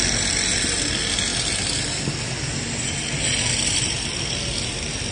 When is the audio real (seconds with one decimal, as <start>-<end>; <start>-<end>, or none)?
0.0-5.1